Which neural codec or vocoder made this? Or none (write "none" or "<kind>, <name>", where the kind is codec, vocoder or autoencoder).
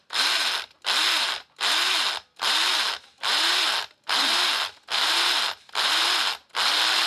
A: none